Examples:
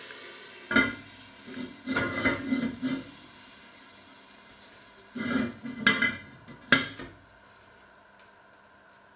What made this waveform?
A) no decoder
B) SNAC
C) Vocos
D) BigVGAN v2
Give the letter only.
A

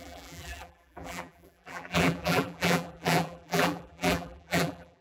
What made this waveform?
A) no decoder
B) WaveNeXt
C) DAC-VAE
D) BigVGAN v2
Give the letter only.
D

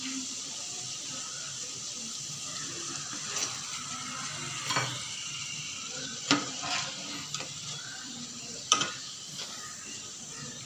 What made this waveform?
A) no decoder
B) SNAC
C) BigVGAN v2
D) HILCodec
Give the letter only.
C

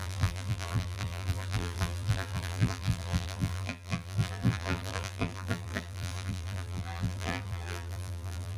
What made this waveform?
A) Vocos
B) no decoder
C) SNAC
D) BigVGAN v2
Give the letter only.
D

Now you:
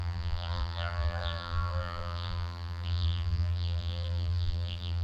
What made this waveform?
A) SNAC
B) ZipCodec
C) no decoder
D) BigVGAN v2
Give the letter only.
D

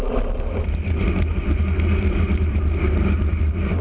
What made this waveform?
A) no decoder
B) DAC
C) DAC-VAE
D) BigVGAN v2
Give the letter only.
A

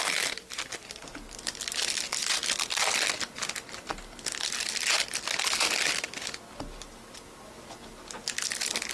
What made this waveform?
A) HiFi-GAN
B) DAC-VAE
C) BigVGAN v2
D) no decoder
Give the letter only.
D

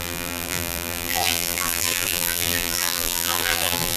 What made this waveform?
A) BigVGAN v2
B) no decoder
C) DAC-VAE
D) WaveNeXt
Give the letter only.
A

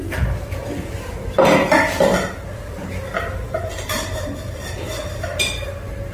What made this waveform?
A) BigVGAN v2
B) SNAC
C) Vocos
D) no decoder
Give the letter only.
A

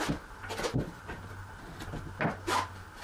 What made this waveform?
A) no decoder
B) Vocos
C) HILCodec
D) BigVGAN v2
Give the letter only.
A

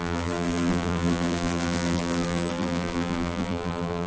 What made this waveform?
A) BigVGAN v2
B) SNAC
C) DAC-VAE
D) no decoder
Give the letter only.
A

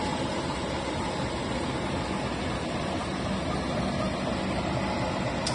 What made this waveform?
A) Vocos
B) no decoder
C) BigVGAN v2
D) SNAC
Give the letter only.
B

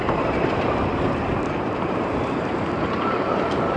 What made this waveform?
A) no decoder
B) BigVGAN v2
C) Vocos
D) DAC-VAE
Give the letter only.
B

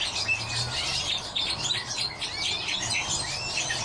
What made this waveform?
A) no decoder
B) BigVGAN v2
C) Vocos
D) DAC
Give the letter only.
A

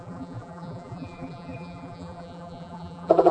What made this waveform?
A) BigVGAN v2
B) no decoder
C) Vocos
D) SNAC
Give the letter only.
A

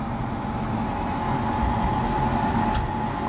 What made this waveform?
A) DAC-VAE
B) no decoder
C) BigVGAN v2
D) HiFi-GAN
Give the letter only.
B